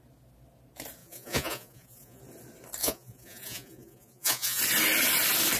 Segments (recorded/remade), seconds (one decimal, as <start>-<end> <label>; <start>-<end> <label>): 0.0-1.0 recorded; 1.0-2.2 remade; 2.2-2.8 recorded; 2.8-4.6 remade; 4.6-5.6 recorded